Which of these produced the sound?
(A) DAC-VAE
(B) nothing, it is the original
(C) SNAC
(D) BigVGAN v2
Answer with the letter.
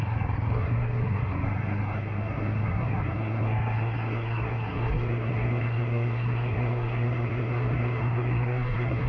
C